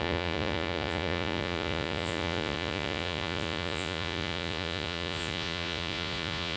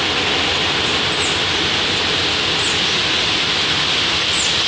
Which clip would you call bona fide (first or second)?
second